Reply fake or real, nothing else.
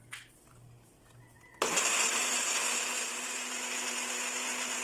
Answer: real